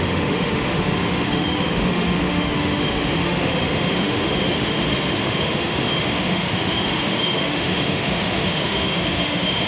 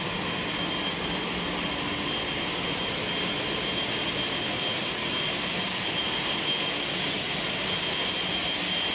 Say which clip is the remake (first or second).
first